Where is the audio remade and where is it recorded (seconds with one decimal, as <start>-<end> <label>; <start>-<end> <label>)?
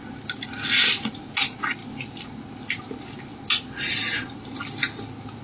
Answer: 0.0-5.4 recorded